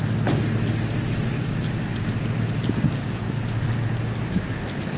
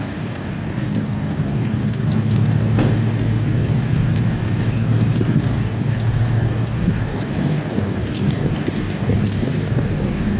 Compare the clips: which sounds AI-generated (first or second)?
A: second